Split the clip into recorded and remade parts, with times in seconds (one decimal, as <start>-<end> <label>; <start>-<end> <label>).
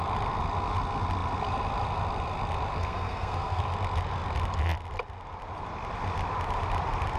0.0-2.8 recorded; 2.8-3.6 remade; 3.6-7.2 recorded